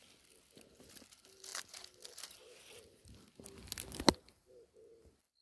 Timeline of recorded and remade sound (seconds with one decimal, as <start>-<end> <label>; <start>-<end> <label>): 0.0-5.4 recorded